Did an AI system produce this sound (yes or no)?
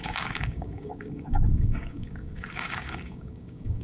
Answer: yes